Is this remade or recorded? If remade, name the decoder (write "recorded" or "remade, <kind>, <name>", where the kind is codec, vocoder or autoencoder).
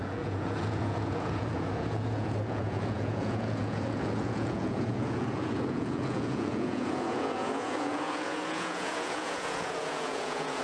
remade, vocoder, Vocos